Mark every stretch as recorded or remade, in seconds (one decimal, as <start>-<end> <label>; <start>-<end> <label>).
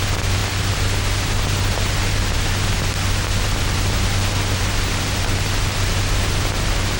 0.0-7.0 recorded